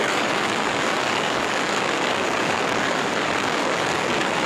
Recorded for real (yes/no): no